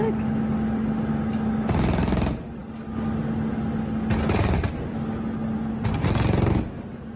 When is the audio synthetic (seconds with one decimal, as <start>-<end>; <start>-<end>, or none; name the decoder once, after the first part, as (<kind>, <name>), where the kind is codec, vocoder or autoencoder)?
none